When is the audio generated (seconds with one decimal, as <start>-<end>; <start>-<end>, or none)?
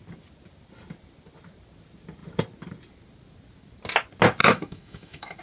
4.4-5.4